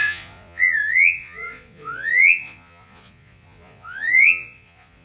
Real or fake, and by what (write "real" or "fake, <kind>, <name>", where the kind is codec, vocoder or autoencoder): fake, vocoder, Vocos